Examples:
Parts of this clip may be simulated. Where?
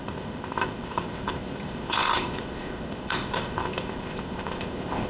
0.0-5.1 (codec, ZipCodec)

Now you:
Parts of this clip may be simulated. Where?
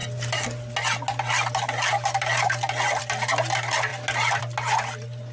none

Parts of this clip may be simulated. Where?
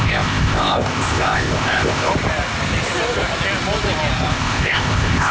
0.0-2.1 (codec, ZipCodec); 4.3-5.3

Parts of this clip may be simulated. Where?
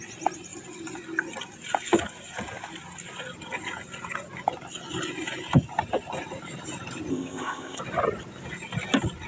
7.1-7.8 (codec, ZipCodec)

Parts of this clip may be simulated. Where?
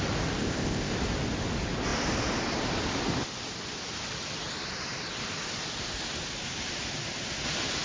0.4-0.9 (codec, ZipCodec)